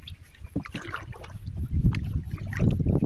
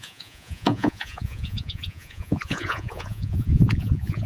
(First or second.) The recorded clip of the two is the first